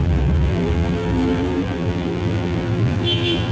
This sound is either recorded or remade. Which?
remade